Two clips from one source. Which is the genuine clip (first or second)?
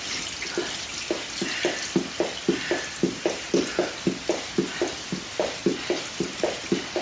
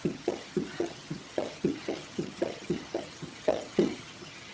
first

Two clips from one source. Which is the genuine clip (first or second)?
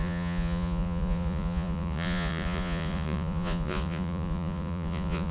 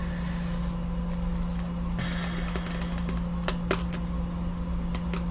second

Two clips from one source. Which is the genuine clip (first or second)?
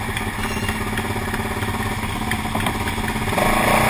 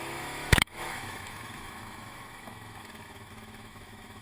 first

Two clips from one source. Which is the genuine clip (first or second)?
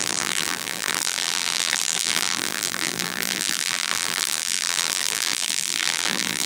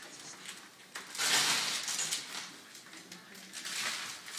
second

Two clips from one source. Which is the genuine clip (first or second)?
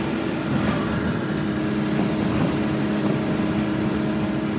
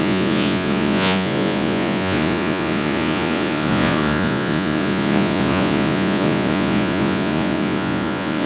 first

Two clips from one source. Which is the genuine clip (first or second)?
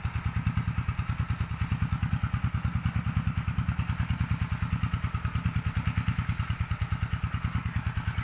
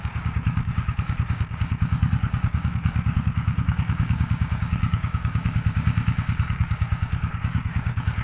first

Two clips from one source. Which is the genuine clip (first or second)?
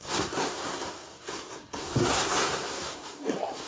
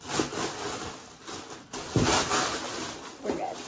second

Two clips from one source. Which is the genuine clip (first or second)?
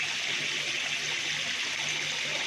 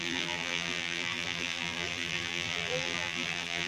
first